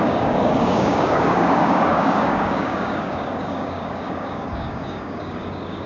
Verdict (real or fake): fake